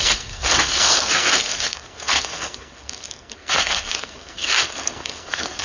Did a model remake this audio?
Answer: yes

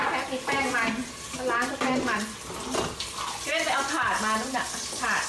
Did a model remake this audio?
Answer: no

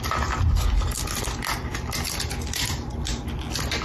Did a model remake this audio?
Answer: no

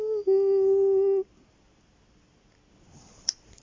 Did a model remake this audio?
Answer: no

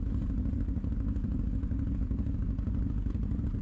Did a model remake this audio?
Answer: no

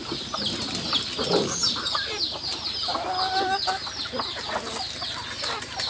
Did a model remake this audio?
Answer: no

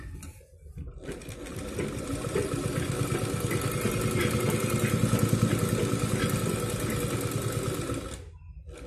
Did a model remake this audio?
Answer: no